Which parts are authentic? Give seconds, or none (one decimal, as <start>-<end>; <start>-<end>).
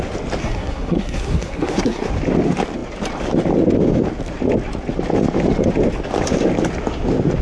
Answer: 0.0-0.4; 2.1-7.4